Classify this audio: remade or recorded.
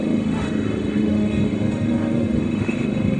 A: remade